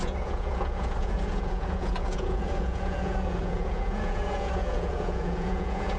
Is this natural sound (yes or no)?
no